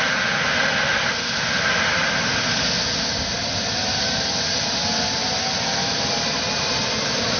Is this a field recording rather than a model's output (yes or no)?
yes